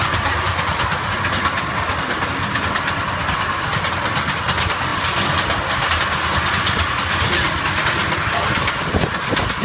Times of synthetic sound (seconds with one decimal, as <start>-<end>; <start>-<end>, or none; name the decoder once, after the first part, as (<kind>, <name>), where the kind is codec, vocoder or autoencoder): none